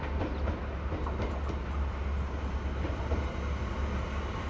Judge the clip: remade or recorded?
recorded